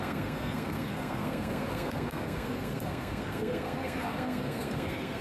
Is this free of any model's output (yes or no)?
no